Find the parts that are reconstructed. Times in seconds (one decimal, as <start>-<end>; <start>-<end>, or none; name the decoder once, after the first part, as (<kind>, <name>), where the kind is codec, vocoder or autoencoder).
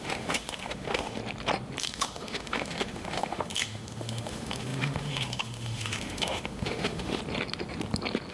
0.0-1.2 (autoencoder, DAC-VAE); 1.8-7.2